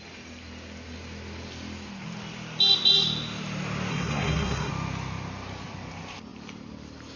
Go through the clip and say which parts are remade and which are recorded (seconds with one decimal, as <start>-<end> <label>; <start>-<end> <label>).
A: 0.0-3.9 recorded; 3.9-4.7 remade; 4.7-7.2 recorded